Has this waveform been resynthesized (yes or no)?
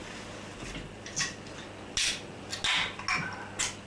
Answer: no